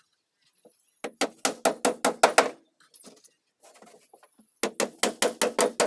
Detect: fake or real real